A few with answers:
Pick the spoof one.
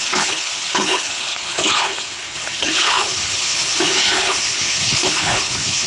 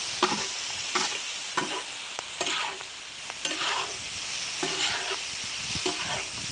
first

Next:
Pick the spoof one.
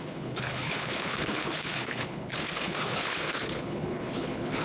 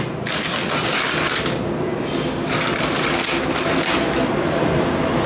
first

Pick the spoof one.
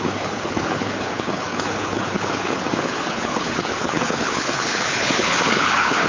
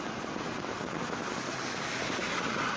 first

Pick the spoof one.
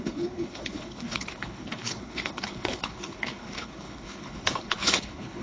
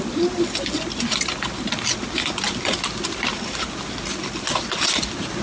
first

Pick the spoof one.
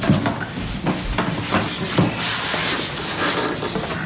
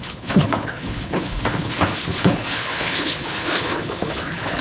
second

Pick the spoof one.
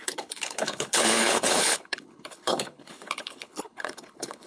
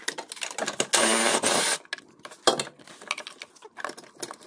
first